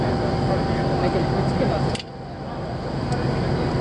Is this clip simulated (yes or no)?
no